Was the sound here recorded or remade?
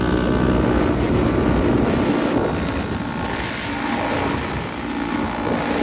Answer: recorded